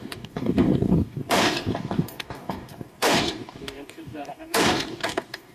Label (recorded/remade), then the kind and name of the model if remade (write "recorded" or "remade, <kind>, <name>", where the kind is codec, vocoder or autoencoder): remade, codec, DAC